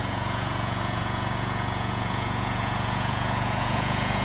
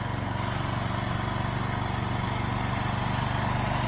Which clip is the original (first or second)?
second